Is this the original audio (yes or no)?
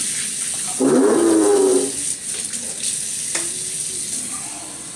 yes